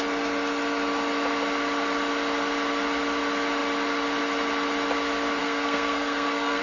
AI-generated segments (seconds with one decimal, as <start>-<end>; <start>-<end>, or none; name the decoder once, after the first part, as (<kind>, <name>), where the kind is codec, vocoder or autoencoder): 5.4-6.6 (codec, SNAC)